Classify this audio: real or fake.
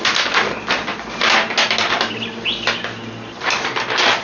real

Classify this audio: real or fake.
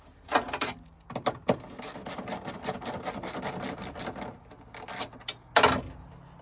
real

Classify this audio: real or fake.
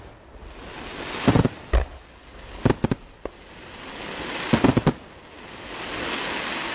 real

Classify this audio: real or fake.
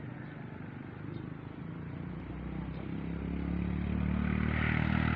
real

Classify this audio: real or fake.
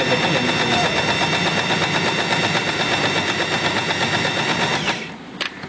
real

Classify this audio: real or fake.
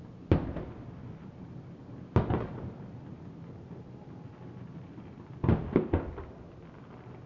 real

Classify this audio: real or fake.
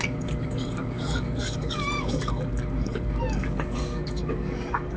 fake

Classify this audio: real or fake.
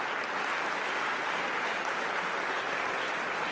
real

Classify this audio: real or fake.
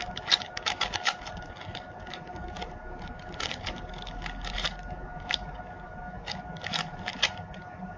fake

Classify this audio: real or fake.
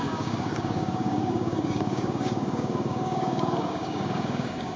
fake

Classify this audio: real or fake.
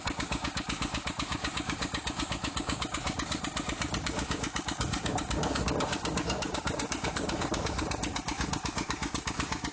fake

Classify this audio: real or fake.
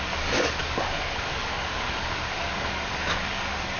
fake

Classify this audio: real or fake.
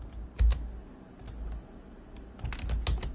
real